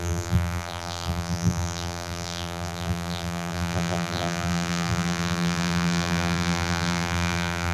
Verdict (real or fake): fake